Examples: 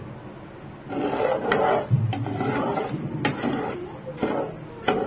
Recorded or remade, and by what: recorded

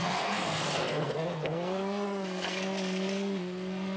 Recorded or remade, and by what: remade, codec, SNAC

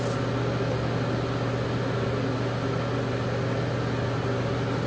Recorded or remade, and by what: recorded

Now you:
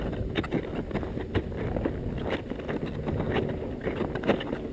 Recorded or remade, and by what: recorded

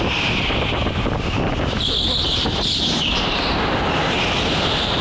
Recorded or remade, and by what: recorded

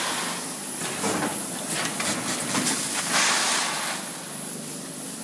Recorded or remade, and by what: recorded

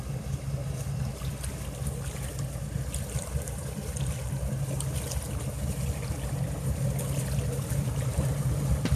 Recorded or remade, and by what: recorded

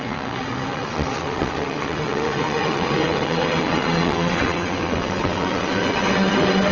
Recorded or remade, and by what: remade, vocoder, WaveNeXt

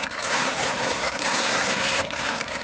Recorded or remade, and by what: remade, codec, SNAC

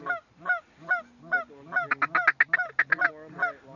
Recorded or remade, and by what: recorded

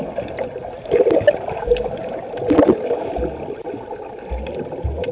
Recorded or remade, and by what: recorded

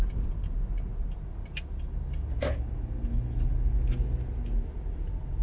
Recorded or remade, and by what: recorded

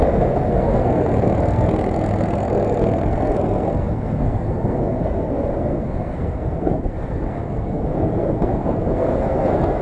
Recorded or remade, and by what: remade, codec, SNAC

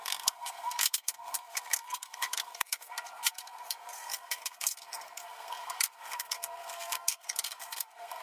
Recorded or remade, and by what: remade, codec, SNAC